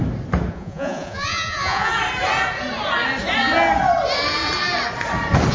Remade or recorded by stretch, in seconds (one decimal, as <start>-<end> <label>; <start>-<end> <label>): 0.0-0.5 recorded; 0.5-1.9 remade; 1.9-5.5 recorded